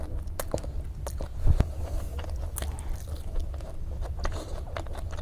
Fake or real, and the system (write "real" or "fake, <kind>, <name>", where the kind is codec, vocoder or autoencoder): real